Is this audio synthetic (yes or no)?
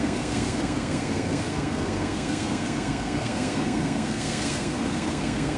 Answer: yes